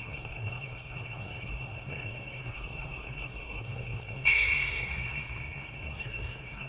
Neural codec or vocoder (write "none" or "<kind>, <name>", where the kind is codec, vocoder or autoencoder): codec, SNAC